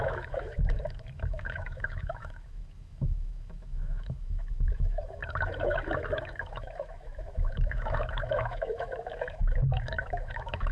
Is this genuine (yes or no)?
no